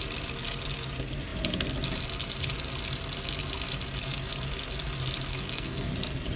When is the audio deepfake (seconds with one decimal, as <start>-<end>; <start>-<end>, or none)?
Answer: 5.3-5.9